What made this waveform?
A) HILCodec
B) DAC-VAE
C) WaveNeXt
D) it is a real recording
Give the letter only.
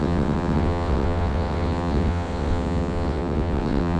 C